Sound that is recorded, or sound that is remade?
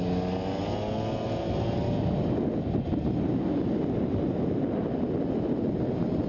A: recorded